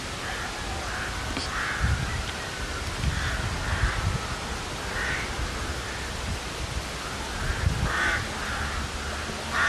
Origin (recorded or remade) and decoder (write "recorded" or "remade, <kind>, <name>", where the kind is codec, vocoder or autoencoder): recorded